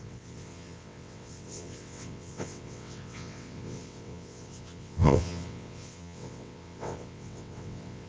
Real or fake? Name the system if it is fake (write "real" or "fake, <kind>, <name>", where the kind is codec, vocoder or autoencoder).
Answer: fake, vocoder, WaveNeXt